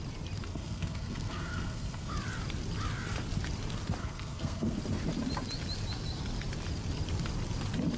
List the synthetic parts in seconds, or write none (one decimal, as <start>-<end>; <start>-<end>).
0.5-2.1; 4.0-4.8